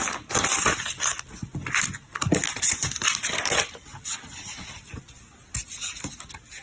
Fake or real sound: real